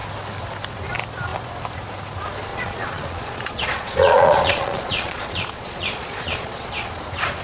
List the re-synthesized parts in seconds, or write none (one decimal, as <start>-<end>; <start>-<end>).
2.5-6.9